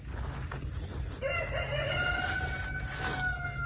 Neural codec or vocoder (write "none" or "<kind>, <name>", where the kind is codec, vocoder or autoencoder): none